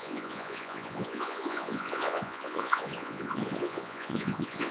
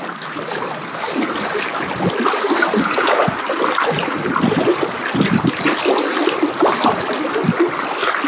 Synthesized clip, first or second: first